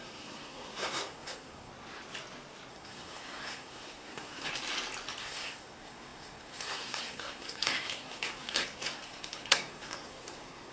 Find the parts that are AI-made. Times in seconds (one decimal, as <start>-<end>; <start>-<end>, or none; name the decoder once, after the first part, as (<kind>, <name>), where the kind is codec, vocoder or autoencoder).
0.0-1.7 (codec, SNAC); 2.7-4.5; 5.2-10.7